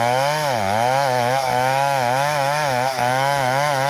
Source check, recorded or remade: remade